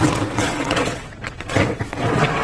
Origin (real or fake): fake